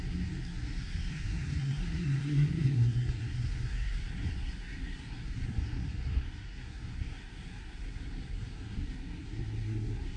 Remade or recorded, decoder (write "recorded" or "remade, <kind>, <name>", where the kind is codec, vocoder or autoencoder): remade, codec, SNAC